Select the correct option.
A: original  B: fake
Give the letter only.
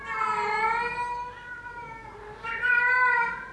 A